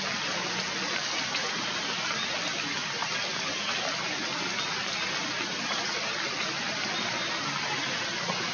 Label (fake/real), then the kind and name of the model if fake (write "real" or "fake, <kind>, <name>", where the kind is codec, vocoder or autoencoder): real